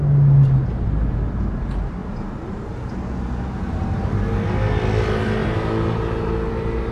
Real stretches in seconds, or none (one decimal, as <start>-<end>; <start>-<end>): 0.0-6.9